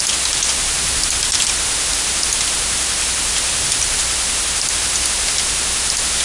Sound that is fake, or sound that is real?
real